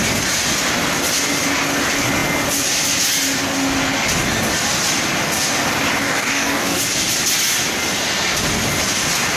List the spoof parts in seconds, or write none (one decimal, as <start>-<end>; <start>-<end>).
6.0-6.8